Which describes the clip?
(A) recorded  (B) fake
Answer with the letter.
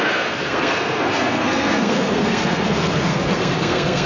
B